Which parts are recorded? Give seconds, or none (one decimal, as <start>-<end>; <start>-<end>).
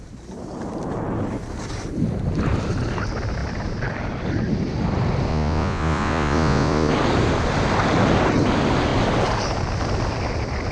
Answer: 0.0-5.3; 6.9-10.7